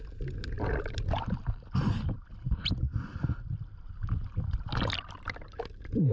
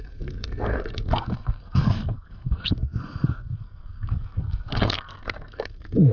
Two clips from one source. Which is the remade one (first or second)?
second